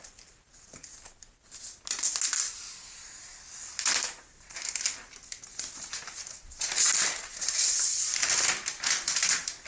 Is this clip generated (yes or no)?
no